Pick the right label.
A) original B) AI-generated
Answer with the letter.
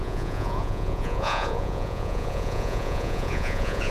B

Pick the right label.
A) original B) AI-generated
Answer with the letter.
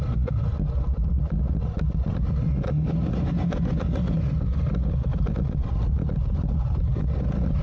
A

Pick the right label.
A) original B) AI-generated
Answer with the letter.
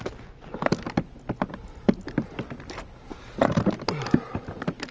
A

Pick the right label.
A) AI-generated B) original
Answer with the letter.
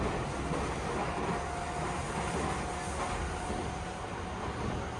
B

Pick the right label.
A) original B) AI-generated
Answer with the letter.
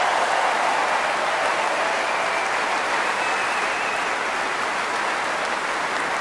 A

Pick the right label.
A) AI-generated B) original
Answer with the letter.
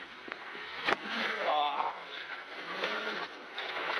A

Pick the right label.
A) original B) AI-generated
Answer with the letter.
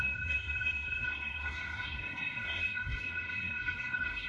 B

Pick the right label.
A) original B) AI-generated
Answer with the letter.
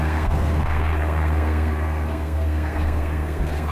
B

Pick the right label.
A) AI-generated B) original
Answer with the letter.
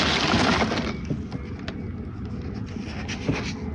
B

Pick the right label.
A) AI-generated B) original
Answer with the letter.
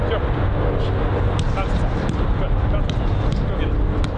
B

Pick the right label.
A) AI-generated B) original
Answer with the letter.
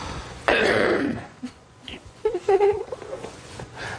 A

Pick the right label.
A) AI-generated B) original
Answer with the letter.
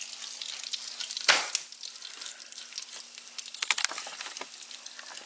B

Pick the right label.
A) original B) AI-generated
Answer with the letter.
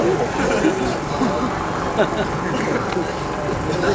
A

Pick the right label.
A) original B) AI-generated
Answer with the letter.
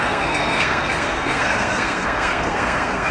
B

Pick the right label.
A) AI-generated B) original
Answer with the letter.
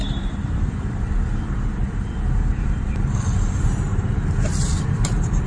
A